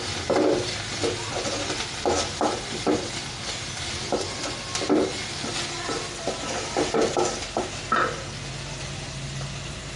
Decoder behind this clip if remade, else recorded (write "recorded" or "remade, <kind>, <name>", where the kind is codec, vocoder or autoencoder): recorded